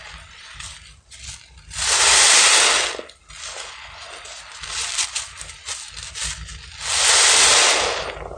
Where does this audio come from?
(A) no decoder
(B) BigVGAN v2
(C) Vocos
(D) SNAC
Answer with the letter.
A